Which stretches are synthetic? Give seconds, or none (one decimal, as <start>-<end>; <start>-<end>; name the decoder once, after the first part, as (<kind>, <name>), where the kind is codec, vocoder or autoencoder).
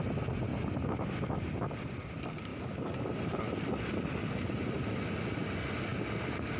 2.5-3.4 (vocoder, BigVGAN v2); 4.2-4.9